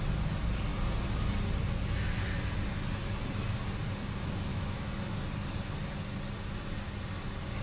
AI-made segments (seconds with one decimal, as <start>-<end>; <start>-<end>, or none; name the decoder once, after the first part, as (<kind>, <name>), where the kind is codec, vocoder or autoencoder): 4.5-5.2 (autoencoder, DAC-VAE)